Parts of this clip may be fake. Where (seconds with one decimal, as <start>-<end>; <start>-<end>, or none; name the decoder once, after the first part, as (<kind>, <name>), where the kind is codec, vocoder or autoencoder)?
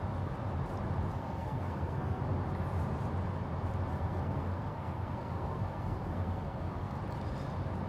1.1-2.2 (codec, SNAC); 3.9-7.0